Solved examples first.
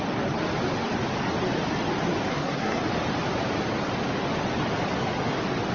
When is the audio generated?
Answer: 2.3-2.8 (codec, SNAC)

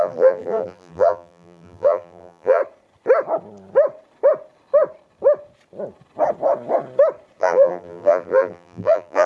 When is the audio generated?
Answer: 0.0-2.6 (vocoder, BigVGAN v2); 7.4-9.3

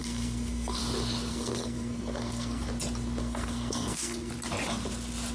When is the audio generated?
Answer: 0.0-0.8 (codec, SNAC); 1.3-2.7; 3.2-4.3

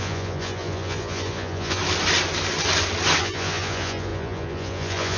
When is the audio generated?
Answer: 0.0-1.8 (vocoder, Vocos); 3.2-5.2

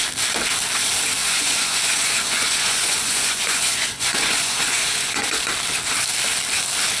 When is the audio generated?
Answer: 1.2-5.4 (vocoder, Vocos)

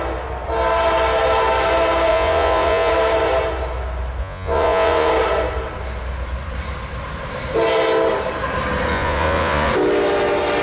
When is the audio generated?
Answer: 2.1-2.9 (vocoder, Vocos); 4.2-5.1; 8.9-9.7

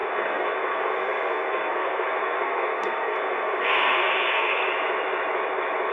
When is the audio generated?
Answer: 0.0-4.6 (codec, SNAC)